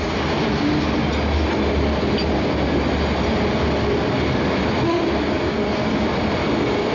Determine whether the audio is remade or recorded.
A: recorded